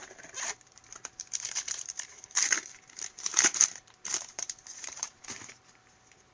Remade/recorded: remade